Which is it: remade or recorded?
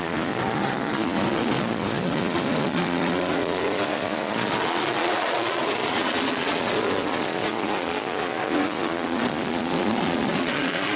remade